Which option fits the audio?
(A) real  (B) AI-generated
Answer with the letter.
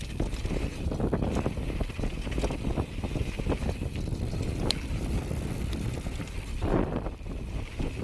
A